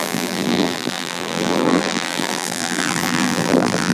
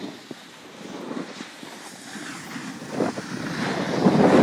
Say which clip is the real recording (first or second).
second